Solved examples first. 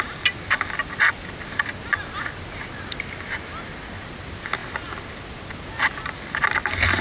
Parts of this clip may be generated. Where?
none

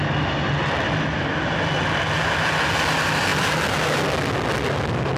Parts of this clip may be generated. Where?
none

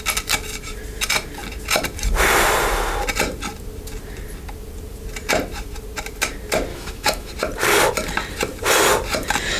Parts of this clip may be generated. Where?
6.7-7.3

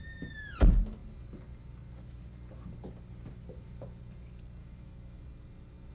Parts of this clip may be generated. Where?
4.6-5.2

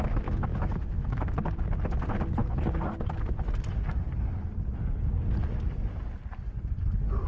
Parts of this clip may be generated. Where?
0.5-1.3

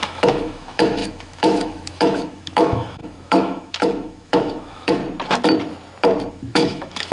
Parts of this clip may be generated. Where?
0.0-5.0; 6.3-7.1

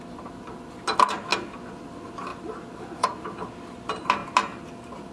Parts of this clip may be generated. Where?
none